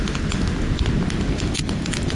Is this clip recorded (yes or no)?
yes